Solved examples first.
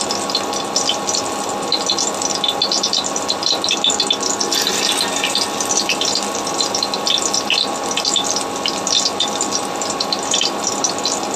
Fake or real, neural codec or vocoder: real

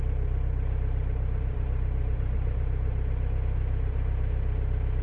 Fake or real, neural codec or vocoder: fake, vocoder, BigVGAN v2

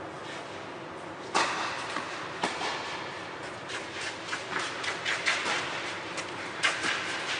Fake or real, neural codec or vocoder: real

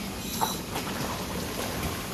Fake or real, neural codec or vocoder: real